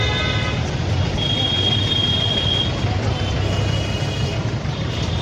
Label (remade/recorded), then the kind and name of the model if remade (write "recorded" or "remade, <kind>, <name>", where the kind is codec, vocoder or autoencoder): recorded